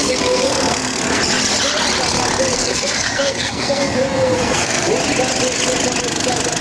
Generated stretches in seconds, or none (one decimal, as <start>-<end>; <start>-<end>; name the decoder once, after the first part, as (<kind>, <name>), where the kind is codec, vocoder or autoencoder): 0.0-1.2 (codec, SNAC); 2.5-4.9